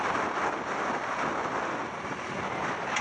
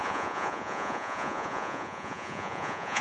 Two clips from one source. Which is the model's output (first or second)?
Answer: second